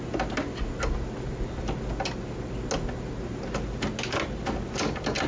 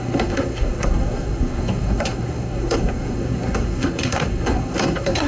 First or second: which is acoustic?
first